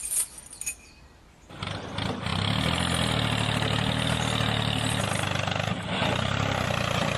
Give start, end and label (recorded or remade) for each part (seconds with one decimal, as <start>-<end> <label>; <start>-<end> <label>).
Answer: 0.0-7.2 recorded